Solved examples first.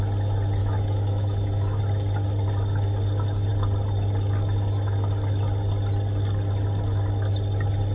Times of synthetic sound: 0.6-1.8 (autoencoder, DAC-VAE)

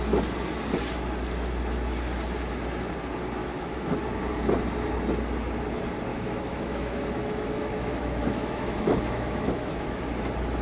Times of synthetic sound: 3.4-4.0 (autoencoder, DAC-VAE); 6.1-10.0